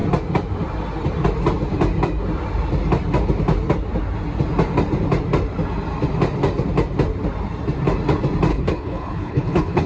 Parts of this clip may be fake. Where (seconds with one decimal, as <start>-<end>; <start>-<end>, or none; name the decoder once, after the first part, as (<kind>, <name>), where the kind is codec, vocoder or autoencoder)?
8.5-9.9 (codec, HILCodec)